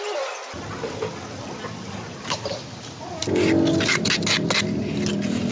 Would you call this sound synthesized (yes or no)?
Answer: no